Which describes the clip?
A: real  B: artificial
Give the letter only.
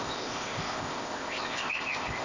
B